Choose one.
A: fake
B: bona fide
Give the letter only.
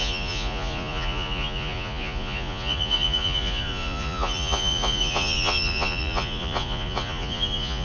A